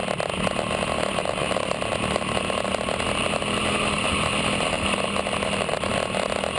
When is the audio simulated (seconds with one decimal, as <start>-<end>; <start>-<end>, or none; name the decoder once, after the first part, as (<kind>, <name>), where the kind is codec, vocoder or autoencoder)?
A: none